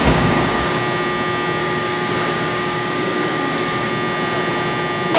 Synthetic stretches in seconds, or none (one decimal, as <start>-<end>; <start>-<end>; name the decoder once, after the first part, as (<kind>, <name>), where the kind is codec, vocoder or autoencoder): 0.0-0.8 (codec, DAC); 1.6-3.9